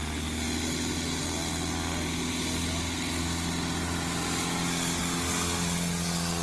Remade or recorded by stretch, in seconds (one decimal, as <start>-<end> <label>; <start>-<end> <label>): 0.0-6.4 recorded